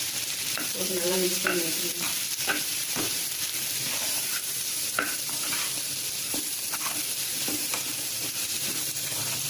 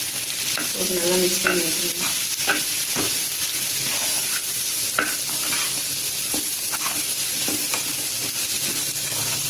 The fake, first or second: first